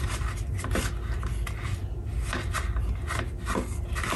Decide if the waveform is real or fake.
real